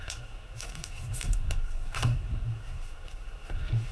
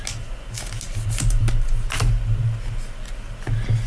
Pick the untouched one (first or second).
second